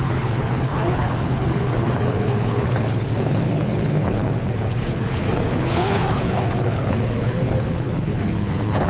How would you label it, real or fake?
fake